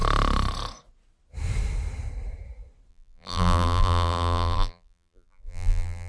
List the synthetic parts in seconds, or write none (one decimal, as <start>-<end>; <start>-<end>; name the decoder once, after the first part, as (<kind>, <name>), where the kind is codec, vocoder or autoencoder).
2.9-6.1 (vocoder, BigVGAN v2)